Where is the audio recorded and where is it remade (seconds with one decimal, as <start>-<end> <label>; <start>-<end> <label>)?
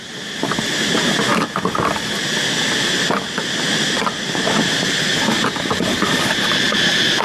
0.0-7.2 recorded